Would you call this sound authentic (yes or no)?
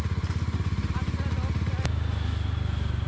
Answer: yes